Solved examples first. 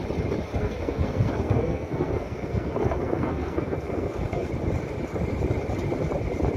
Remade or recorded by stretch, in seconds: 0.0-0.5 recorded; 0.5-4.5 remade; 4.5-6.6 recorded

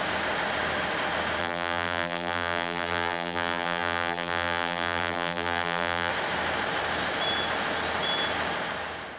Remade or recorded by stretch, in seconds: 0.0-1.4 recorded; 1.4-6.1 remade; 6.1-9.2 recorded

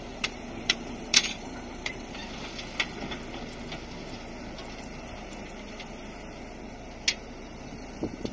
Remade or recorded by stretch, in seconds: 0.0-2.2 remade; 2.2-4.8 recorded; 4.8-6.0 remade; 6.0-7.1 recorded; 7.1-8.3 remade